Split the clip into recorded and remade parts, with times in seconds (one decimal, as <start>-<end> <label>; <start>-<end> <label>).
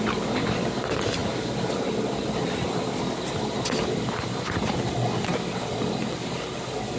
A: 0.0-1.2 remade; 1.2-2.9 recorded; 2.9-5.3 remade; 5.3-6.0 recorded; 6.0-7.0 remade